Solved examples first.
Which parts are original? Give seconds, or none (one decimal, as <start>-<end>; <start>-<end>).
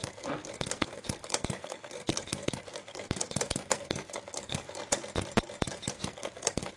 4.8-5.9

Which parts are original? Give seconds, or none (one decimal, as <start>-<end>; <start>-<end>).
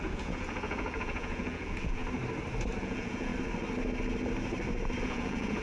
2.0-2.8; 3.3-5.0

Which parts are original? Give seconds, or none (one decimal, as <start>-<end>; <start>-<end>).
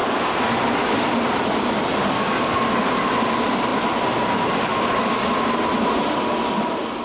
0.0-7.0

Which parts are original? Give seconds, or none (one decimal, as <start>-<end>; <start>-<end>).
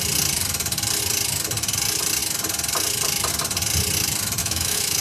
0.0-4.4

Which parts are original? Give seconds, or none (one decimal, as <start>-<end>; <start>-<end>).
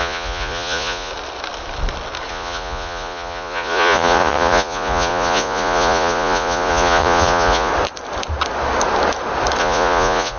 1.1-2.3; 7.7-9.6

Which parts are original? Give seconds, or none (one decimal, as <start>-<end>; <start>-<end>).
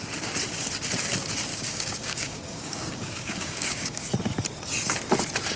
0.0-1.5; 4.1-5.6